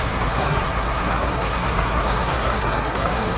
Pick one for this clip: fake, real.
fake